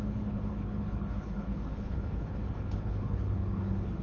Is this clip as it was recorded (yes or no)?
no